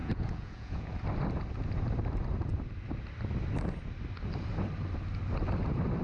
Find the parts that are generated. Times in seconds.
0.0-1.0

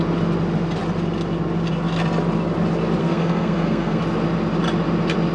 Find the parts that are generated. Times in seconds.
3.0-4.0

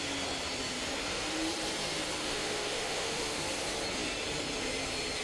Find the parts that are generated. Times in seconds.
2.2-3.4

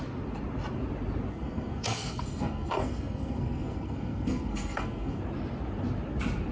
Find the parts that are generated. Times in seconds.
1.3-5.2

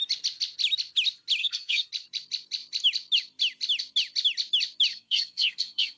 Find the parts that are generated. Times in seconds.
1.4-1.9; 4.9-6.0

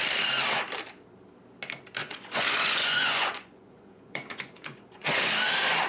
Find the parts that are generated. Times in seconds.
2.0-5.3

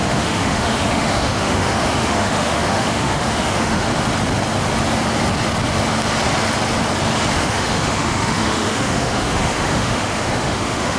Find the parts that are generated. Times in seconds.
0.0-3.9; 7.4-11.0